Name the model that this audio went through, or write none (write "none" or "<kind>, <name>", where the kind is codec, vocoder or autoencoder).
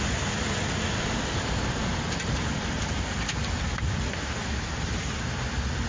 vocoder, BigVGAN v2